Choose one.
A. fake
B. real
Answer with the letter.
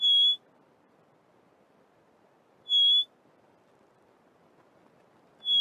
B